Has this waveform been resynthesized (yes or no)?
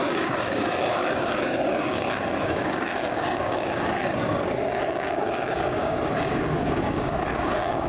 yes